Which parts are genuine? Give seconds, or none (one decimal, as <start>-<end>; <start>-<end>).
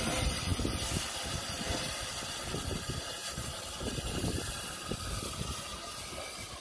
0.0-6.6